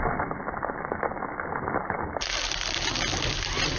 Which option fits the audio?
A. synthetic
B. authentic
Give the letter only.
B